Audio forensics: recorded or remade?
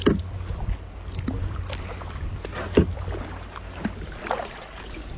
recorded